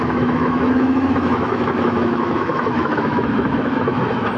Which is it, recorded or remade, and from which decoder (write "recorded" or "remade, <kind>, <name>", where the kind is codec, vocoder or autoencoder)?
remade, autoencoder, DAC-VAE